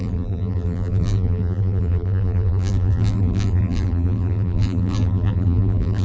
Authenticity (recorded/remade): remade